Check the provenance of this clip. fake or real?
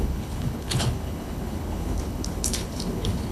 fake